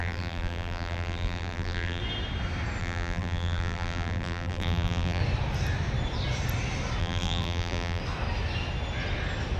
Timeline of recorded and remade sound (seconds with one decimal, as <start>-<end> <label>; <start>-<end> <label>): 0.0-2.0 remade; 2.0-2.8 recorded; 2.8-5.2 remade; 5.2-7.0 recorded; 7.0-8.0 remade; 8.0-9.6 recorded